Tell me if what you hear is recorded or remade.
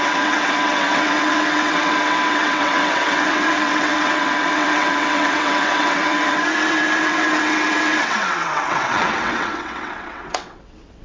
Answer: remade